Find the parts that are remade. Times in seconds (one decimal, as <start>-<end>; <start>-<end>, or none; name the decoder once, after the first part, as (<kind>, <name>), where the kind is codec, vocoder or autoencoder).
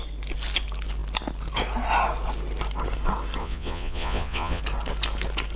3.4-4.6 (vocoder, Vocos)